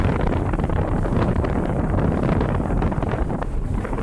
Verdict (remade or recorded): remade